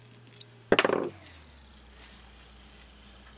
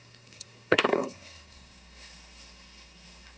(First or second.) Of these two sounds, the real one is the first